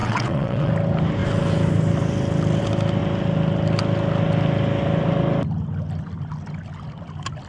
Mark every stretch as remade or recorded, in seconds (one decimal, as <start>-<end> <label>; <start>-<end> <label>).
0.0-0.7 remade; 0.7-7.5 recorded